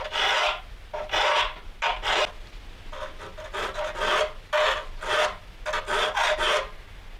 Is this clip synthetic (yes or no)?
no